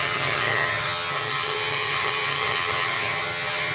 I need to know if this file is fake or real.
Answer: fake